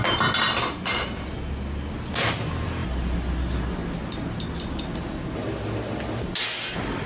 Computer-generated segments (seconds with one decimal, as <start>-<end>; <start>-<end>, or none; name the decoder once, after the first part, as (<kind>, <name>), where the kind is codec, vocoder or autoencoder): none